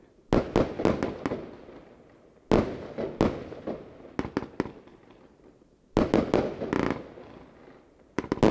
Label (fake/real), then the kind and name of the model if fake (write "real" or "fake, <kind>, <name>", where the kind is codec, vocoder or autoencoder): real